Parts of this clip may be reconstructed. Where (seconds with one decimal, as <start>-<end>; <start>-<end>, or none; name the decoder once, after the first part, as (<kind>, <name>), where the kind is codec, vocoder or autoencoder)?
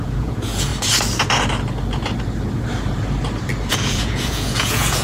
0.0-0.7 (vocoder, Vocos); 3.7-5.0